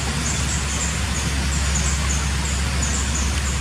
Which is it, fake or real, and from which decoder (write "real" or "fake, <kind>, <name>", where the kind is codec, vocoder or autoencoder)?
real